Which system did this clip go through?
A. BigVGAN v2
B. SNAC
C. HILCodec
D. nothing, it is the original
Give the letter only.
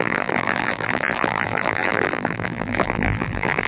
A